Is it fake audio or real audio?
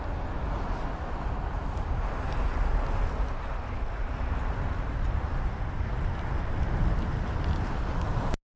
real